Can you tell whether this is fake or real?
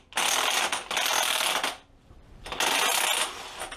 real